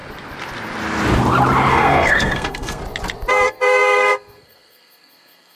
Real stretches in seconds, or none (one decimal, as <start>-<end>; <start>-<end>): 0.0-1.7; 2.8-3.3